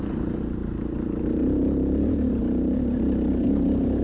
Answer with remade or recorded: remade